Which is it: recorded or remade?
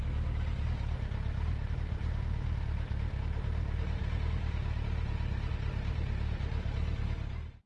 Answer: recorded